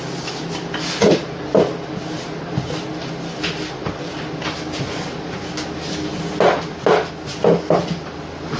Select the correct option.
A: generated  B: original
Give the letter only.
B